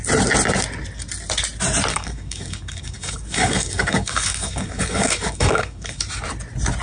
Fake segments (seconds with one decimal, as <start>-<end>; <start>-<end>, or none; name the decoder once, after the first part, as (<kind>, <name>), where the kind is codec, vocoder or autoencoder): 1.9-6.0 (codec, DAC)